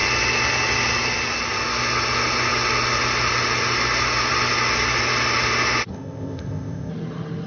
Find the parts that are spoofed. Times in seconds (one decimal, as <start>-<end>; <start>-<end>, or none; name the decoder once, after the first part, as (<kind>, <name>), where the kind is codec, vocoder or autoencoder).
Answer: 5.9-6.9 (codec, ZipCodec)